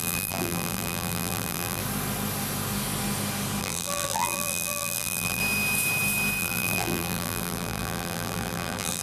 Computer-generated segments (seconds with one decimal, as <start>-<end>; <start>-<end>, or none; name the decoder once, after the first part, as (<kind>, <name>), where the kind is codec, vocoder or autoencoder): 0.0-1.8 (vocoder, BigVGAN v2); 3.6-5.4; 6.4-9.0